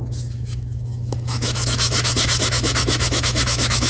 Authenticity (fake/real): fake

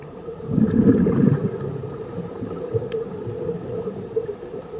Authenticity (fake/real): fake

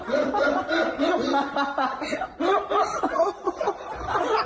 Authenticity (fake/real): real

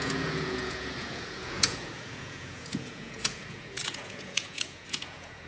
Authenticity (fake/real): fake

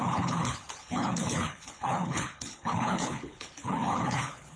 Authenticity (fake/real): fake